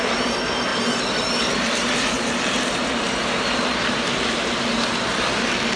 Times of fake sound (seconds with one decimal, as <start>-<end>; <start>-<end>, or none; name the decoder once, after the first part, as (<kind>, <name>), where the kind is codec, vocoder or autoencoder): 0.0-5.8 (vocoder, BigVGAN v2)